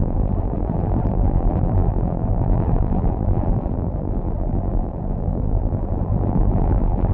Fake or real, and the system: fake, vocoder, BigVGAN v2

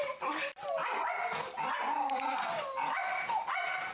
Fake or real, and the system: real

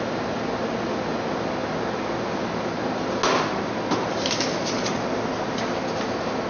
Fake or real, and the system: real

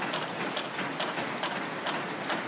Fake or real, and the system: real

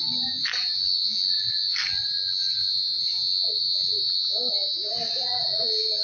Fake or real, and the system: real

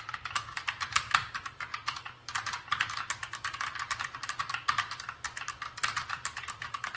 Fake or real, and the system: real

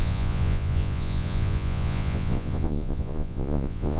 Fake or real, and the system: fake, vocoder, Vocos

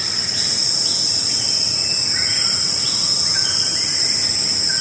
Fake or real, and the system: real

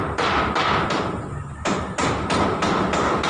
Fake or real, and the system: real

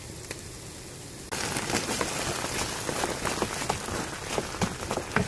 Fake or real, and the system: real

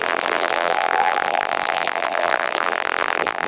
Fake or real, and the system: fake, vocoder, BigVGAN v2